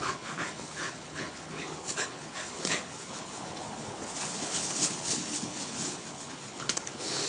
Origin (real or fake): fake